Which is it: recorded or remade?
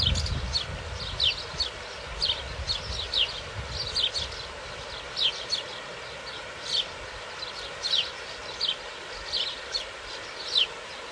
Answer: recorded